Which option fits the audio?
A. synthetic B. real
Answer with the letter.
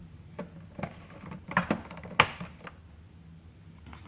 B